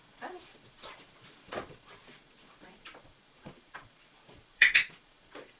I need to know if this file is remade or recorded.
remade